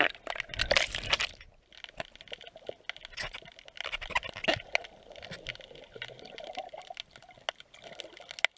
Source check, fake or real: real